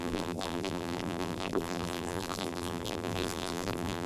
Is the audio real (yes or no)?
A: no